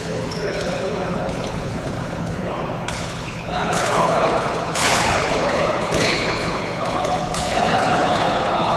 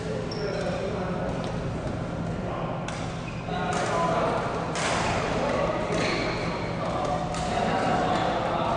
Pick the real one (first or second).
second